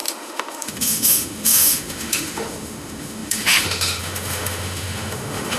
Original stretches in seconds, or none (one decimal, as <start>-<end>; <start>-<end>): none